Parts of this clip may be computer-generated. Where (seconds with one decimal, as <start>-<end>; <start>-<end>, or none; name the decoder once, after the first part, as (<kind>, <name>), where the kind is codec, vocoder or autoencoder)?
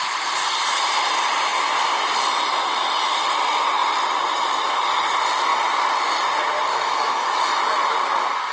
6.7-7.6 (autoencoder, DAC-VAE)